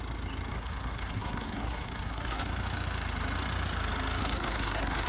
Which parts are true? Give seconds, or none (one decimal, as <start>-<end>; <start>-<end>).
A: 0.0-0.5; 2.5-4.2

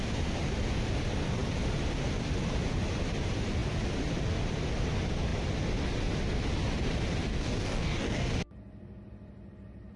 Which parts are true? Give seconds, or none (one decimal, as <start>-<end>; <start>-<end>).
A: 0.0-7.3; 8.3-10.0

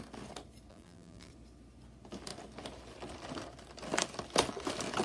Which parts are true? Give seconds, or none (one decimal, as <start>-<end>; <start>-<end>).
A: 0.0-0.7; 1.3-5.0

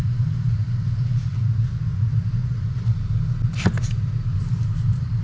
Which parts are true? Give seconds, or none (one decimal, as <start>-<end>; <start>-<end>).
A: 1.3-4.3

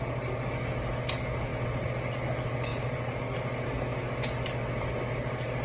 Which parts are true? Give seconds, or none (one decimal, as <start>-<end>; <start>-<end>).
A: 0.0-5.6

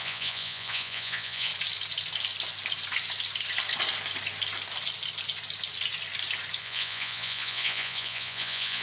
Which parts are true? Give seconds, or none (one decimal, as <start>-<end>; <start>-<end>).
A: 1.5-6.6

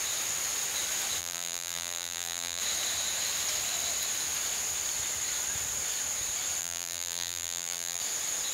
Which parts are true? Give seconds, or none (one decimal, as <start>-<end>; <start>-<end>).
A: 0.0-1.2; 2.6-6.6; 8.0-8.5